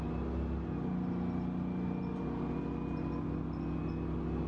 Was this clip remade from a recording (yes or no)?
no